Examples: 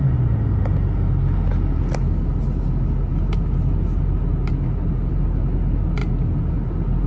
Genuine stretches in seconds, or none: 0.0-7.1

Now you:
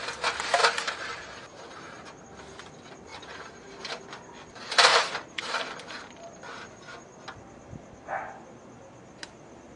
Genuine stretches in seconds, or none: 0.0-0.6; 2.2-3.1; 4.0-4.9; 6.4-9.8

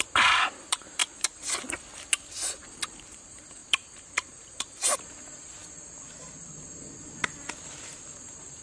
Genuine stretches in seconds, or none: 1.0-2.7; 5.6-7.8

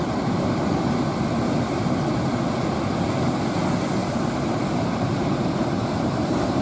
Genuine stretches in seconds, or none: 0.0-4.0

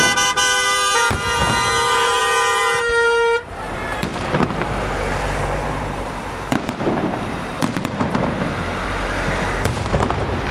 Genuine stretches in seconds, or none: none

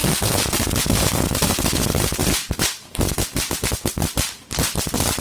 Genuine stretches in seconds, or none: 0.0-2.2; 3.0-5.2